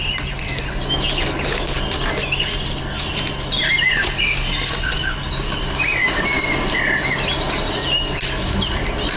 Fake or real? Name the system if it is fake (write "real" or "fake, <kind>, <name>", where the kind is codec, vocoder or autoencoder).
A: real